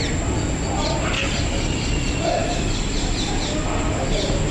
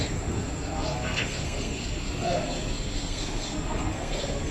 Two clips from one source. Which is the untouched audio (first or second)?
first